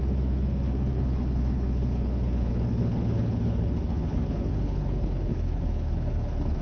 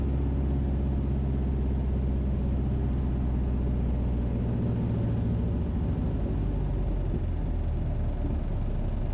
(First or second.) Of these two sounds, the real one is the second